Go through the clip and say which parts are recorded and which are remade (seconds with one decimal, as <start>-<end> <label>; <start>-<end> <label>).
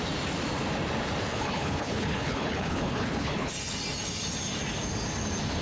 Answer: 0.0-1.3 recorded; 1.3-3.5 remade; 3.5-5.6 recorded